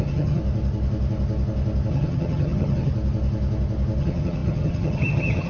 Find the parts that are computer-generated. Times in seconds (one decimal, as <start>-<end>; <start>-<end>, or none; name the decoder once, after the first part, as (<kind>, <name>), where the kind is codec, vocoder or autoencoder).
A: 0.0-0.4 (vocoder, HiFi-GAN); 1.9-2.9; 4.0-5.5